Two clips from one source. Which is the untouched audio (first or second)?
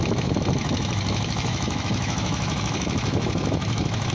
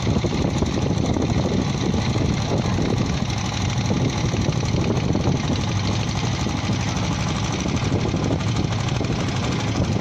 second